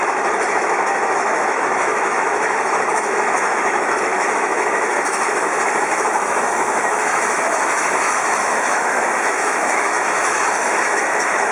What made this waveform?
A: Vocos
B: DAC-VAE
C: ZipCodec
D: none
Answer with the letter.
B